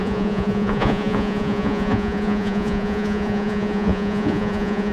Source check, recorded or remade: remade